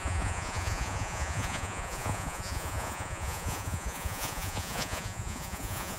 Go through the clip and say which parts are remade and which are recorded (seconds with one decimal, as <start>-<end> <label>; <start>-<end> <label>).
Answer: 0.0-6.0 remade